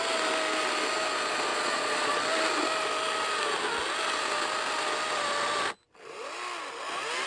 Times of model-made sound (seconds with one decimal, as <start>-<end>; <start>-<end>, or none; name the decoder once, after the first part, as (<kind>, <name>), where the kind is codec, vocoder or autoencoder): 1.5-2.2 (vocoder, Vocos)